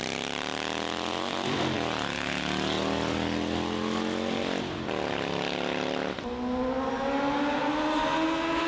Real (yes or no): yes